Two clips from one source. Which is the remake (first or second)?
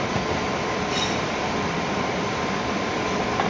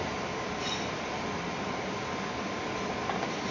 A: first